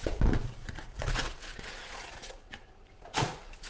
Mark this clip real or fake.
fake